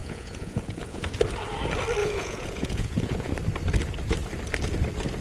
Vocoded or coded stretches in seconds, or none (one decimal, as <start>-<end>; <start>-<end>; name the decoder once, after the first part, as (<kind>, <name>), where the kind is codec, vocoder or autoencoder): 0.0-1.0 (vocoder, Vocos); 2.0-3.3